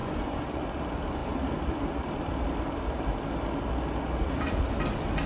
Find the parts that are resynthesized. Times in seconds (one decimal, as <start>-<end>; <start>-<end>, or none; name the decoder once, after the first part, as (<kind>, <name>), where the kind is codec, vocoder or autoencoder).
0.0-0.6 (vocoder, Vocos)